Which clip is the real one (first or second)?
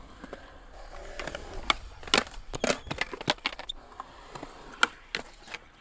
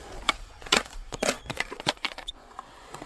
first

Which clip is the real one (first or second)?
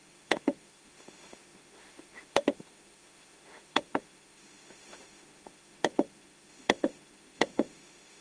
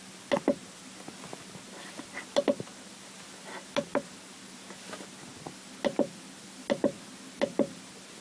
second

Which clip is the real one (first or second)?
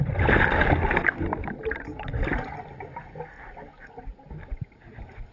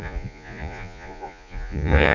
first